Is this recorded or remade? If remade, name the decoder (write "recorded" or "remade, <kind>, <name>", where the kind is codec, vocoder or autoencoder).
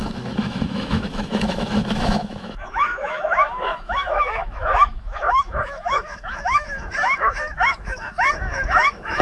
remade, autoencoder, DAC-VAE